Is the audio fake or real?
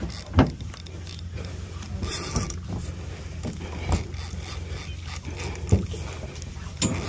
real